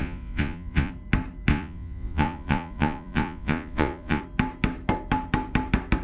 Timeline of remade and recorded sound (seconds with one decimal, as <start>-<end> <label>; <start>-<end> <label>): 0.0-0.9 remade; 0.9-1.5 recorded; 1.5-4.2 remade; 4.2-6.0 recorded